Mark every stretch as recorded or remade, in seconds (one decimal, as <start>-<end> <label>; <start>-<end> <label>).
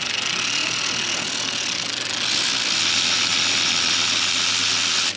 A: 0.0-5.2 recorded